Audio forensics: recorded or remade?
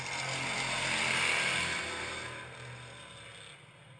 recorded